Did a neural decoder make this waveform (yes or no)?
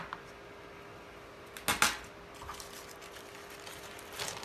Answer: no